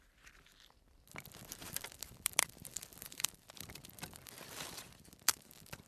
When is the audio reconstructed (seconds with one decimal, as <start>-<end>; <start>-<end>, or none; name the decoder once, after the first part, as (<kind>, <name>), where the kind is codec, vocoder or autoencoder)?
0.0-5.9 (vocoder, BigVGAN v2)